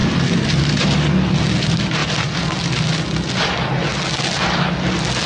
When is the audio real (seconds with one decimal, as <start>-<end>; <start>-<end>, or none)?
0.0-5.3